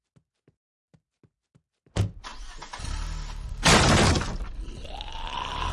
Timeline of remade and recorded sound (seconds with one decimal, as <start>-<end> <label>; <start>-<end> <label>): 0.0-5.7 recorded